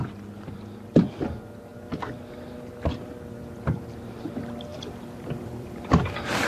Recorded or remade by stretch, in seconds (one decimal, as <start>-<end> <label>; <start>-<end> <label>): 0.0-4.7 recorded; 4.7-5.8 remade; 5.8-6.5 recorded